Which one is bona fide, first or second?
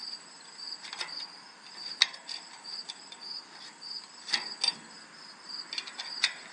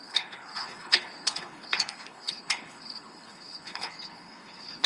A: first